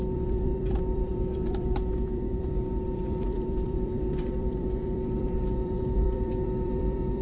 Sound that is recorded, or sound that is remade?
remade